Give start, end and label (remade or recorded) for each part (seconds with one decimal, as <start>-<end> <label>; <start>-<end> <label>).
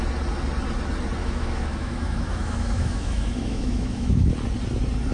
0.0-1.2 recorded; 1.2-4.3 remade; 4.3-5.1 recorded